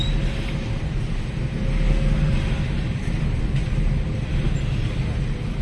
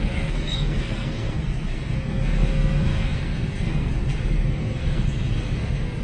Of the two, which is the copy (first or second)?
second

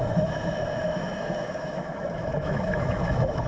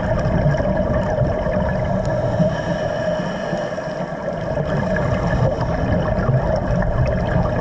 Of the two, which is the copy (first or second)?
first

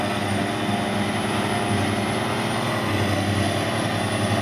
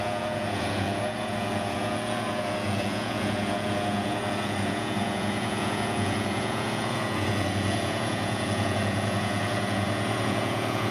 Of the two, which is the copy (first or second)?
second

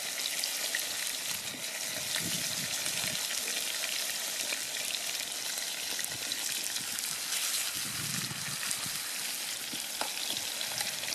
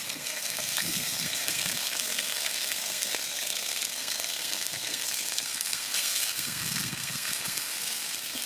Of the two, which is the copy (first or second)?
second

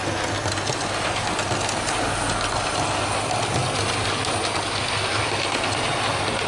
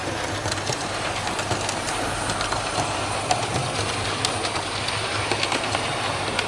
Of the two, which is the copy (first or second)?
second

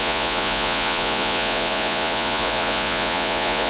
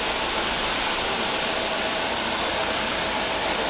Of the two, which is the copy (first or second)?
first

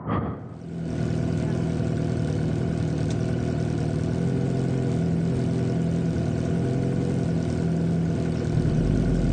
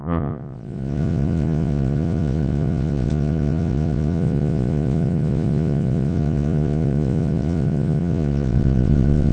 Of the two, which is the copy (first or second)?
second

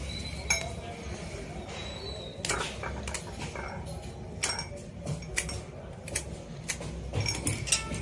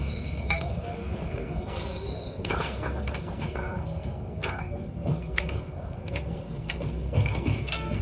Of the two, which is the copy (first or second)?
second